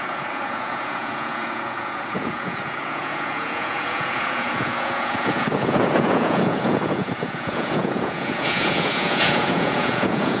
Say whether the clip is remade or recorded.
remade